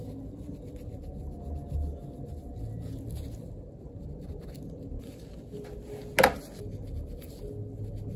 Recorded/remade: recorded